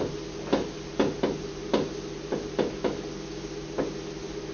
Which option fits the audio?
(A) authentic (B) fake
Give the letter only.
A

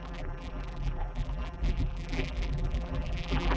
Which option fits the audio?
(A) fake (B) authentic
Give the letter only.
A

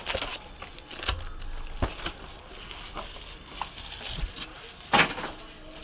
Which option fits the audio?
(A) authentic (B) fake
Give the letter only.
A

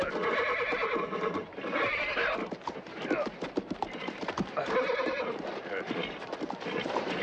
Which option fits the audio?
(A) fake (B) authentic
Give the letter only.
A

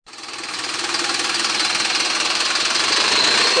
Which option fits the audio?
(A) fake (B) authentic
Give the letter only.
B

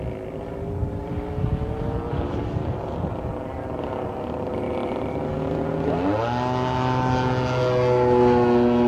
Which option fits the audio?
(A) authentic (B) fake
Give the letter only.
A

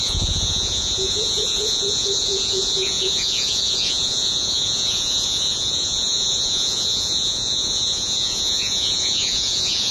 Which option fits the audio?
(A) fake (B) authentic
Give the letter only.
A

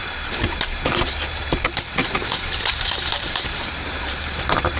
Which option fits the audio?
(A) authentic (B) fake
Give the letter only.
B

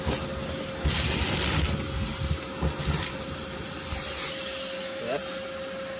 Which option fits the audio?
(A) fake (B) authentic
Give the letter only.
B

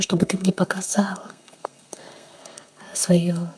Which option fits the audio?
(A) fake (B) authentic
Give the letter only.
A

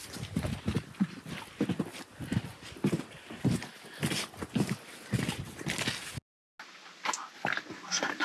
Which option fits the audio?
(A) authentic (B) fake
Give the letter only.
A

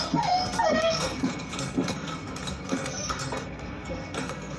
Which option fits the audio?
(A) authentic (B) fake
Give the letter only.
B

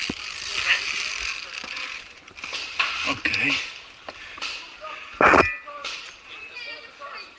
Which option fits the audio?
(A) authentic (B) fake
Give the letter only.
A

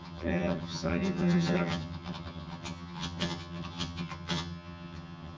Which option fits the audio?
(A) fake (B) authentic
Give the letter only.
A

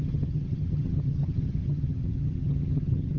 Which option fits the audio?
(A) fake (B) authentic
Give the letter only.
A